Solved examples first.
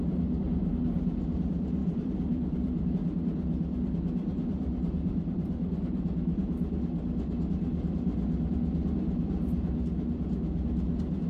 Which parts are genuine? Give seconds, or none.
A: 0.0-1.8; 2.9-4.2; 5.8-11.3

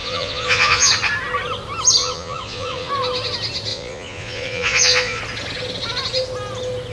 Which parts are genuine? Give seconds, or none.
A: 0.9-2.0; 2.9-3.7; 5.2-6.9

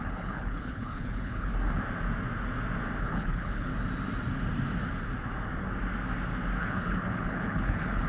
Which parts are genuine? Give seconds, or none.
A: 1.5-3.0; 3.7-6.6

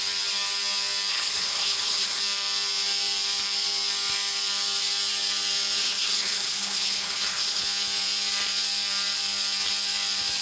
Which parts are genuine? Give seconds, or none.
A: 0.0-1.1; 2.2-5.8; 7.6-10.4

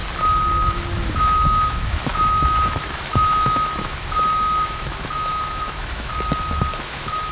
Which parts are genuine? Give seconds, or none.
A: 0.0-1.1; 6.1-6.8

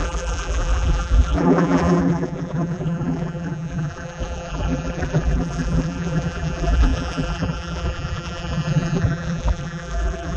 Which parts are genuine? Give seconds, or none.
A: none

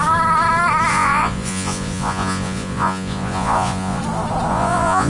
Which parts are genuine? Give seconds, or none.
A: 0.0-0.9; 4.0-4.5